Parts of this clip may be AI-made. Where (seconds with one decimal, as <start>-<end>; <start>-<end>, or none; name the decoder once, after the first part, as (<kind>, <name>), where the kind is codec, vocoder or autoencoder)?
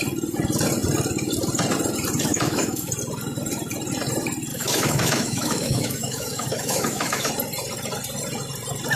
2.3-2.9 (autoencoder, DAC-VAE); 4.5-7.3